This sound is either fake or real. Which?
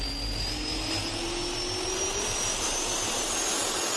real